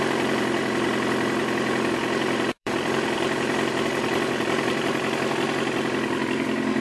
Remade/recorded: remade